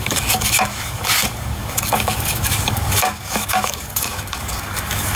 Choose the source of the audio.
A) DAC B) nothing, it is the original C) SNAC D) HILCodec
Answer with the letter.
A